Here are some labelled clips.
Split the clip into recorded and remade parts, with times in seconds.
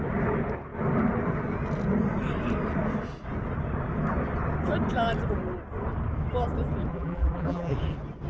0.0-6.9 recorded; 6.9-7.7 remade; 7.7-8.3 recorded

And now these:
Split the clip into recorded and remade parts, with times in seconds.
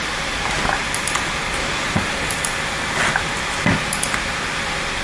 0.0-1.7 recorded; 1.7-3.7 remade; 3.7-5.0 recorded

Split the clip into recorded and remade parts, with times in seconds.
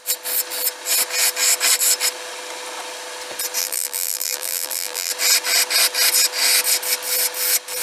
0.0-3.6 recorded; 3.6-5.1 remade; 5.1-7.8 recorded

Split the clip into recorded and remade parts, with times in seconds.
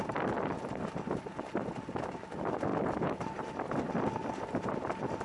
0.0-2.7 recorded; 2.7-3.4 remade; 3.4-5.2 recorded